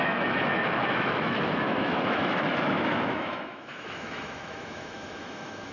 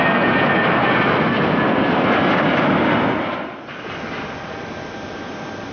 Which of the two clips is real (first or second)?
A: second